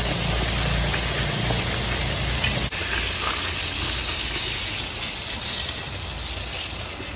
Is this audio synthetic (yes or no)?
no